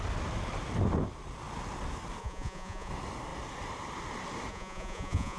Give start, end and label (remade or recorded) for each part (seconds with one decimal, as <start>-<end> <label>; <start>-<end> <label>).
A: 0.0-2.2 recorded; 2.2-2.9 remade; 2.9-4.5 recorded; 4.5-5.4 remade